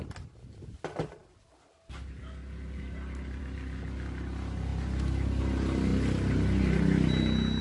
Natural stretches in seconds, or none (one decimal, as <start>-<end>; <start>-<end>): 0.0-7.6